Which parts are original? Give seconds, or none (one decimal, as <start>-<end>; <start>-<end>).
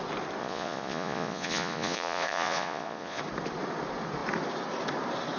0.0-0.4; 3.2-5.4